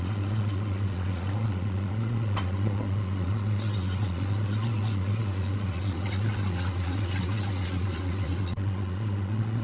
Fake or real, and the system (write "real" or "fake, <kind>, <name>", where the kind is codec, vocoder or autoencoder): fake, vocoder, Vocos